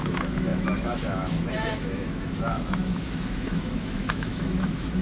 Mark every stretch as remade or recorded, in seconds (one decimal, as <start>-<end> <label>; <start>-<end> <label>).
0.0-5.0 remade